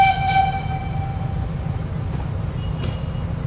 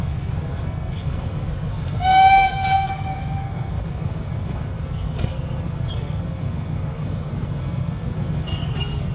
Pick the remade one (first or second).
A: second